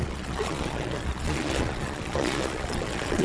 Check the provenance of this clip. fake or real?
fake